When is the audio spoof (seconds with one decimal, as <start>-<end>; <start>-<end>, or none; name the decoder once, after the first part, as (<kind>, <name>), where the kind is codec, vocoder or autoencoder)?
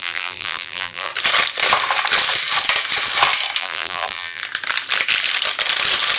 0.0-1.1 (vocoder, BigVGAN v2); 3.6-4.4